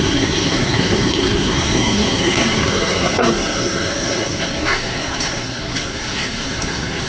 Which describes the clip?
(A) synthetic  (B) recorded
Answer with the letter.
A